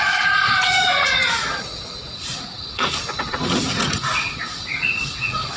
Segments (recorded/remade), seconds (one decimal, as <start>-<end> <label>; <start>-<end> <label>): 0.0-1.2 remade; 1.2-2.2 recorded; 2.2-5.6 remade